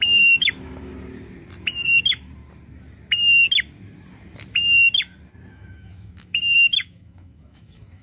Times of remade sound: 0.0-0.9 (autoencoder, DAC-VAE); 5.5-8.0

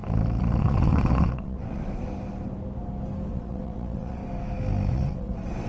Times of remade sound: 0.6-2.0 (vocoder, WaveNeXt); 3.3-4.2; 4.9-5.7

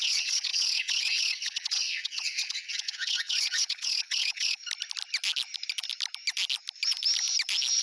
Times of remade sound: 0.0-4.6 (vocoder, WaveNeXt)

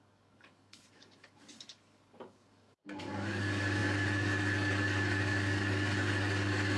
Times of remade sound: 0.0-6.8 (codec, DAC)